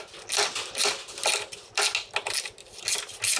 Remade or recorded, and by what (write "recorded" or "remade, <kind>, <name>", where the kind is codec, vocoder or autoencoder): recorded